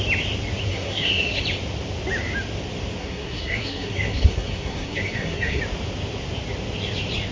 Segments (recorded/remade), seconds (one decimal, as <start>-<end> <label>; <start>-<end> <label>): 0.0-0.7 recorded; 0.7-1.4 remade; 1.4-3.0 recorded; 3.0-5.6 remade; 5.6-7.3 recorded